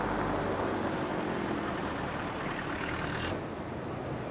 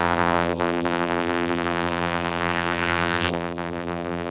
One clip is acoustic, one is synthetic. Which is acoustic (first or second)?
first